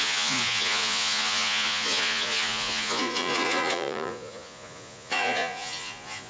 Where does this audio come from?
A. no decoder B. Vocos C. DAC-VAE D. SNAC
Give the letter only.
B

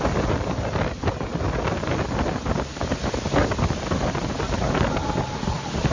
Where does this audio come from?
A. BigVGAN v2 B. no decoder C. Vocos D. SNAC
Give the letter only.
B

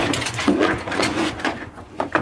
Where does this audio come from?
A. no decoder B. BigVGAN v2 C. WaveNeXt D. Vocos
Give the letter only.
D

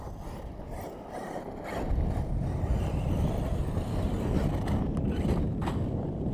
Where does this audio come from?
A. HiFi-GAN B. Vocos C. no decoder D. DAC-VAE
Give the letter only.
C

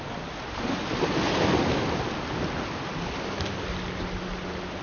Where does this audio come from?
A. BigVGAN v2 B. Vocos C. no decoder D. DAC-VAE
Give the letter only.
C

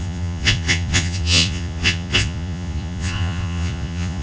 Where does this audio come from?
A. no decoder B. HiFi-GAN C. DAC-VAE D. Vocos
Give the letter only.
D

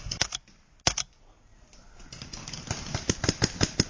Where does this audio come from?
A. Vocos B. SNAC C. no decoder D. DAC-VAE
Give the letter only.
C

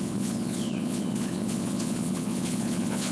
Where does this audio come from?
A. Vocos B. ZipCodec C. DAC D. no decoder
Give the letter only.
A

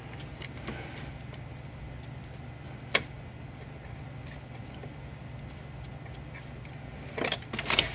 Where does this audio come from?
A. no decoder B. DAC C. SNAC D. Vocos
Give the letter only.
A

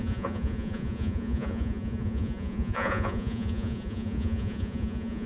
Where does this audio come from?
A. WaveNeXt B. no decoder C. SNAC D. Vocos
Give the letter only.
D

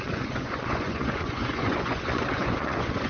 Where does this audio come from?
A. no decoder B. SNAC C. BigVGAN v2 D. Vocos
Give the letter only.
D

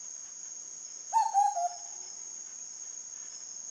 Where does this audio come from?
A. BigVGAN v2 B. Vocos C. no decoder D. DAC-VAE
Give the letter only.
C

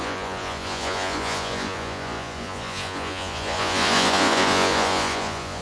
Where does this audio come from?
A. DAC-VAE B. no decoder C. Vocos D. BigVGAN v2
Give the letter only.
C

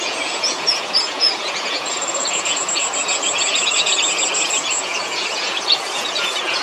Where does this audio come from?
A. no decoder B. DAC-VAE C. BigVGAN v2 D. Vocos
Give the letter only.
D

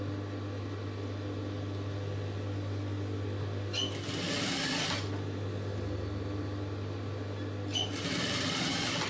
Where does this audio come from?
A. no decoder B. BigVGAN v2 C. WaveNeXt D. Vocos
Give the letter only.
A